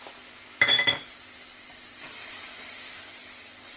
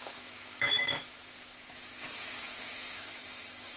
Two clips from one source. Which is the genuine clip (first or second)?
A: first